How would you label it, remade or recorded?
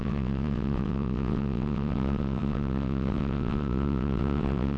remade